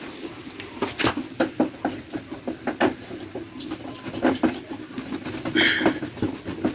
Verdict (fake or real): real